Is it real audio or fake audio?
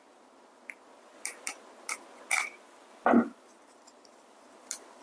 real